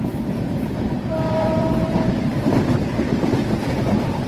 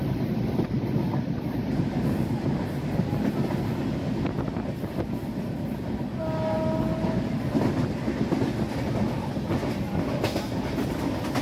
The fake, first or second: first